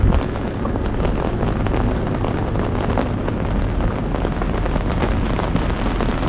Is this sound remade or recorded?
recorded